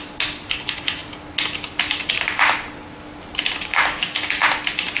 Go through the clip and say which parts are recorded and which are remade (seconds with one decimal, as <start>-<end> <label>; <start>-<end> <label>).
0.0-3.7 recorded; 3.7-4.3 remade; 4.3-5.0 recorded